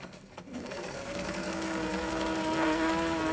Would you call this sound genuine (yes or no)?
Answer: no